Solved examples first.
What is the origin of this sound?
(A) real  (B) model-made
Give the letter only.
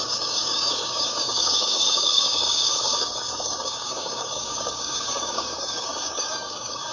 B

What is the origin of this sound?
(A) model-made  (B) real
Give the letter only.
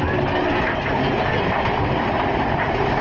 B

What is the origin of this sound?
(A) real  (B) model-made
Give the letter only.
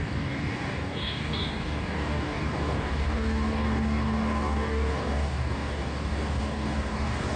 B